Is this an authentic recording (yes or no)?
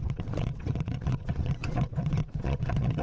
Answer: no